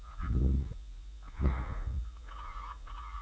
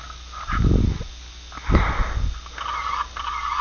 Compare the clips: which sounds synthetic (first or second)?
first